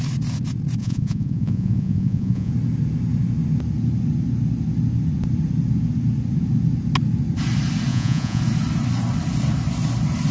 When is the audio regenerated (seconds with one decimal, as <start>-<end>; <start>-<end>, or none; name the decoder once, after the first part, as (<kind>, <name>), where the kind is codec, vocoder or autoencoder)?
0.8-2.5 (vocoder, Vocos); 7.9-8.4